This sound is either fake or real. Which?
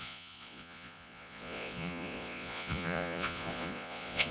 fake